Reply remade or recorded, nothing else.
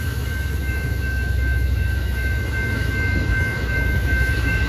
remade